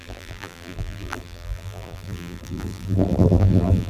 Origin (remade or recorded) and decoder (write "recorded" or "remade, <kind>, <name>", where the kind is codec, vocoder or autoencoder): remade, vocoder, BigVGAN v2